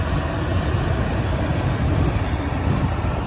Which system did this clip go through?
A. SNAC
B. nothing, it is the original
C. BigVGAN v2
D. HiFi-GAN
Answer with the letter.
B